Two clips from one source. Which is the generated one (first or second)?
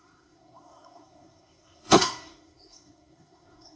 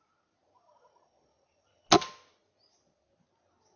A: first